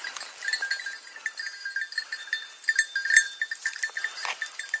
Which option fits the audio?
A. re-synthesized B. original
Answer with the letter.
B